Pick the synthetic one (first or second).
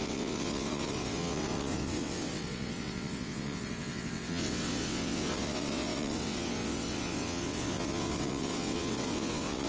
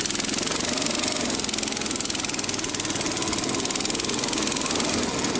first